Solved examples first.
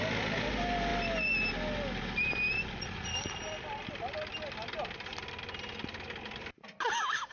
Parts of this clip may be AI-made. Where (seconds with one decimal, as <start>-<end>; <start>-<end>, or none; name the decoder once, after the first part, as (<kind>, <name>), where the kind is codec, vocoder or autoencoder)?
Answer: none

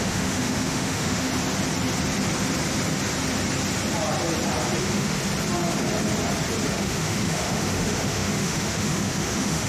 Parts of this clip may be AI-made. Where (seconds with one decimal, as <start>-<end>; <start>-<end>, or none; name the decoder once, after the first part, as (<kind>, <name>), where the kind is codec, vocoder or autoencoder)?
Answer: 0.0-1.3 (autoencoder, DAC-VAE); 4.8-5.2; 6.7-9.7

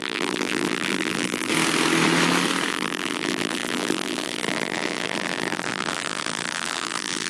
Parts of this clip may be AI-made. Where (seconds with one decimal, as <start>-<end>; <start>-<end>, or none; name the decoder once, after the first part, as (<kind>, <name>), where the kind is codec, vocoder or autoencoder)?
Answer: 0.0-1.5 (vocoder, BigVGAN v2); 2.7-7.3